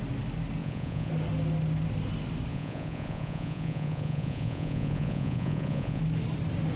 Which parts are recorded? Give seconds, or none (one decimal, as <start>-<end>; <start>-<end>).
0.0-0.6; 1.1-2.5; 6.0-6.8